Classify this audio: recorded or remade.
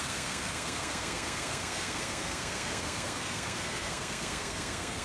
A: remade